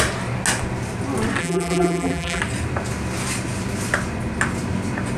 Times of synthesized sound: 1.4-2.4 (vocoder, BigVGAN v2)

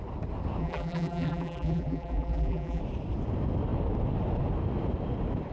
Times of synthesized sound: 0.6-2.8 (vocoder, BigVGAN v2)

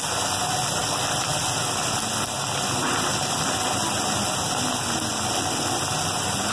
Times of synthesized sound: none